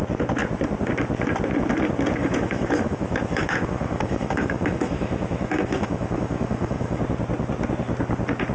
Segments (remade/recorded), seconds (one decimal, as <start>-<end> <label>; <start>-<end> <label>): 0.0-2.2 recorded; 2.2-7.0 remade; 7.0-8.5 recorded